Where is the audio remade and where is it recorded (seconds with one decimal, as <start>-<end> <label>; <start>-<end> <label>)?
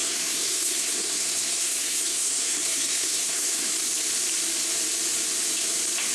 0.0-3.7 remade; 3.7-6.1 recorded